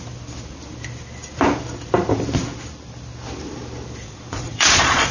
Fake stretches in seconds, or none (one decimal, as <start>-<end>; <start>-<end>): 4.0-5.1